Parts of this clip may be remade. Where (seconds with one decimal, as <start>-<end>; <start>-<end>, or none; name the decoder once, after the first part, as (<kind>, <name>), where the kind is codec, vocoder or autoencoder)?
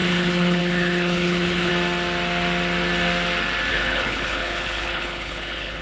0.0-1.7 (codec, HILCodec); 3.7-5.8